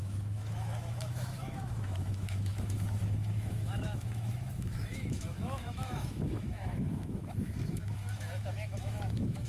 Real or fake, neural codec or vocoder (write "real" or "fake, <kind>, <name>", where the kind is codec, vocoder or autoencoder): fake, autoencoder, DAC-VAE